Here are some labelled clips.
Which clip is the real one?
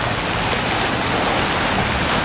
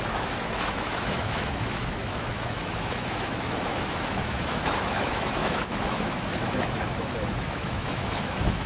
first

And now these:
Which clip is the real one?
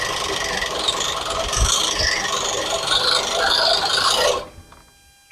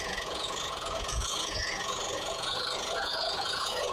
first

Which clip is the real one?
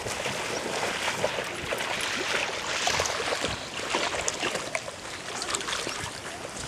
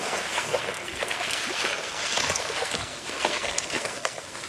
first